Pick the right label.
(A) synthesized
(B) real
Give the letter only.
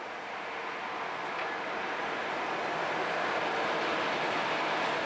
B